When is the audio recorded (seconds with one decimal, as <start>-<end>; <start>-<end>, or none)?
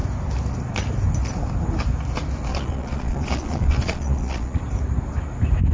0.0-2.5; 4.6-5.7